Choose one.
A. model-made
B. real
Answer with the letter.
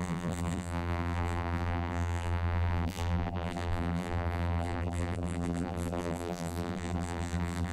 A